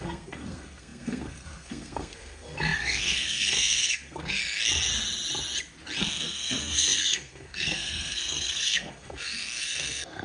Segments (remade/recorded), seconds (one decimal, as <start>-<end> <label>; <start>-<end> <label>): 0.0-4.4 remade; 4.4-6.0 recorded; 6.0-10.2 remade